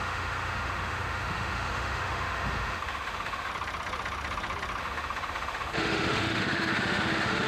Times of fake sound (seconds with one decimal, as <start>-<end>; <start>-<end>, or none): 0.0-3.5; 4.8-7.5